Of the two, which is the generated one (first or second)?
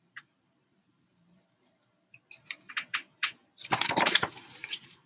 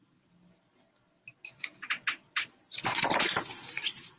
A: first